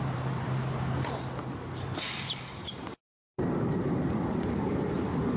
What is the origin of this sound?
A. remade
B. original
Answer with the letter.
A